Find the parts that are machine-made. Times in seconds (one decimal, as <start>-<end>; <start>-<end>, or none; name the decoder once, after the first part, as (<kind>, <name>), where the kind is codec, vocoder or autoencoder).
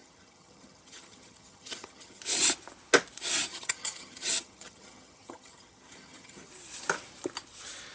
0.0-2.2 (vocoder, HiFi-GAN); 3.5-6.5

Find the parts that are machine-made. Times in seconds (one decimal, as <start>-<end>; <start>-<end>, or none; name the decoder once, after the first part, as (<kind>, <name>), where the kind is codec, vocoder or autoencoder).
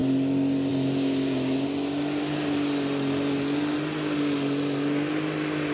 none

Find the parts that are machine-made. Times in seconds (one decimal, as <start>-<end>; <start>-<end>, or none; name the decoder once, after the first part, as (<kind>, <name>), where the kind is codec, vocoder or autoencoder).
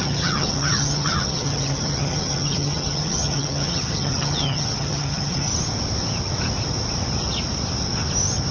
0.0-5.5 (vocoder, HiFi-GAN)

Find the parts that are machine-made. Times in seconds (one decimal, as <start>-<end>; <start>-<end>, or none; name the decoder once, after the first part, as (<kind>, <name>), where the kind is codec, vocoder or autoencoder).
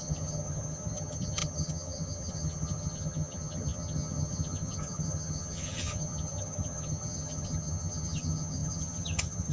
0.0-9.5 (vocoder, HiFi-GAN)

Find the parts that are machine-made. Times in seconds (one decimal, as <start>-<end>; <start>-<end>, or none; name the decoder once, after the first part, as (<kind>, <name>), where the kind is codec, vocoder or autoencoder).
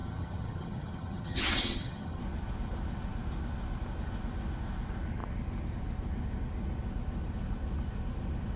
0.0-2.2 (vocoder, HiFi-GAN)